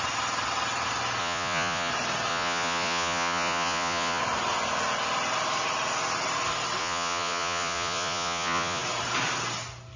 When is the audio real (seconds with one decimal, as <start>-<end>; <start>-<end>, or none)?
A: 0.0-1.2; 1.9-2.3; 4.2-6.8; 8.8-10.0